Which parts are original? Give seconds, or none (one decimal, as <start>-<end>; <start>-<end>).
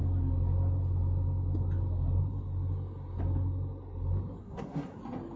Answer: 0.0-4.4; 5.0-5.4